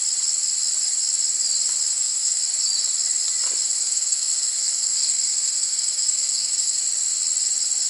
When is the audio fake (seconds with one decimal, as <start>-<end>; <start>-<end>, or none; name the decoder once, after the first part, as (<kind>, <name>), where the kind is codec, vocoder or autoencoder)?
1.9-2.4 (codec, SNAC); 3.7-6.8